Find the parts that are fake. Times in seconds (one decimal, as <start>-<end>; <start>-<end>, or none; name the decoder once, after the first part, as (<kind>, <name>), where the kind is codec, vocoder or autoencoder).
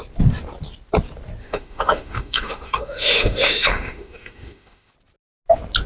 1.4-4.9 (autoencoder, DAC-VAE)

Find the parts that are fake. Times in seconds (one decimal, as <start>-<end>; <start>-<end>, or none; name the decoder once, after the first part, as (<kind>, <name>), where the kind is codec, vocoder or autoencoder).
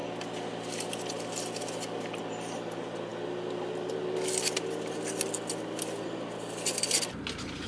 none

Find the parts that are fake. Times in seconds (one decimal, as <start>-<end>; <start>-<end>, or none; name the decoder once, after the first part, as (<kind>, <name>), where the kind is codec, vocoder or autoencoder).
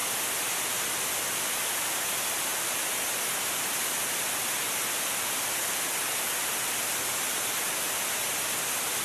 none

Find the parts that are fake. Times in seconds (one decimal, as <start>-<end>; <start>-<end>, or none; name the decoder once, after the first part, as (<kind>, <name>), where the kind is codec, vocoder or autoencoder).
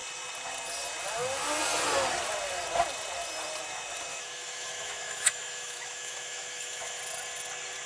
4.1-7.0 (autoencoder, DAC-VAE)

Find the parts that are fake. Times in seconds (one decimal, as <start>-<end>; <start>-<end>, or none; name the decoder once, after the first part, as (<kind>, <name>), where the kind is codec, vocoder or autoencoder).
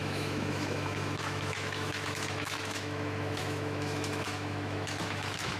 0.0-5.6 (autoencoder, DAC-VAE)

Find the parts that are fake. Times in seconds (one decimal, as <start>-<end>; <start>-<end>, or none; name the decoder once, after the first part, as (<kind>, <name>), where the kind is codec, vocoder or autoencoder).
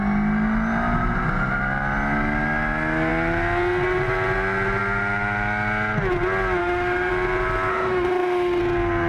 6.6-7.1 (autoencoder, DAC-VAE); 7.7-8.6